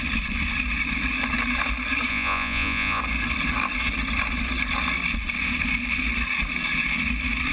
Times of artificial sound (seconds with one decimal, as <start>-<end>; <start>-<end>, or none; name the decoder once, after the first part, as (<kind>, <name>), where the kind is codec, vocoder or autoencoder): 2.1-3.0 (vocoder, Vocos)

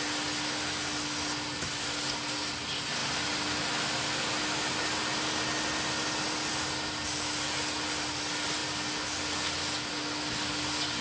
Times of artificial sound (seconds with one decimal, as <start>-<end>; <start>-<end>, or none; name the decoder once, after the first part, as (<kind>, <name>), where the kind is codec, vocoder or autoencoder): none

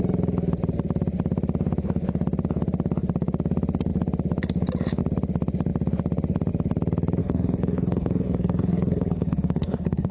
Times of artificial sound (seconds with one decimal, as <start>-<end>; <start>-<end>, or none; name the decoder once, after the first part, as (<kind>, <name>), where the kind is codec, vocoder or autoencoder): 7.2-10.1 (codec, SNAC)

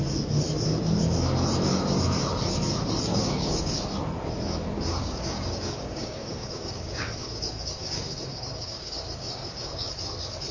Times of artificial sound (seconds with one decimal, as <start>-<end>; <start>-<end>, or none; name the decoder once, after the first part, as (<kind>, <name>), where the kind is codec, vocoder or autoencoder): 3.1-3.7 (codec, DAC); 5.0-9.9

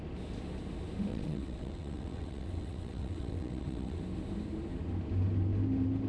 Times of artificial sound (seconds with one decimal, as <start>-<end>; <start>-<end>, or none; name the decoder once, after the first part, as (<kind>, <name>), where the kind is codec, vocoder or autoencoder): 1.1-4.0 (vocoder, WaveNeXt)

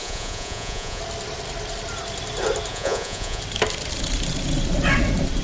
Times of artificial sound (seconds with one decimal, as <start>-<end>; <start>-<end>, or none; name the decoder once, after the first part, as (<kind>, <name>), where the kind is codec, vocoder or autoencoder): 0.0-1.0 (vocoder, Vocos); 2.7-3.4

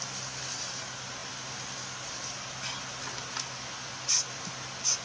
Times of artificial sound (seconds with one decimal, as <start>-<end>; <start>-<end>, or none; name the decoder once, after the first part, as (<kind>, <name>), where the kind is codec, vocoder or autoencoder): none

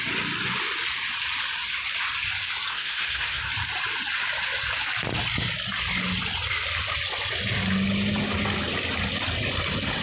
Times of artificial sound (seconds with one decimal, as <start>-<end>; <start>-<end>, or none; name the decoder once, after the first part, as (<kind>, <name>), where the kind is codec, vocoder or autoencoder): 2.7-3.4 (codec, SNAC)